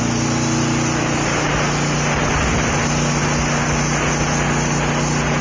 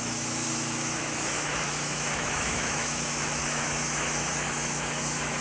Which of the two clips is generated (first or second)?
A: second